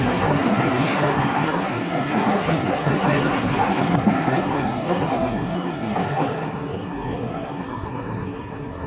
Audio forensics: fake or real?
fake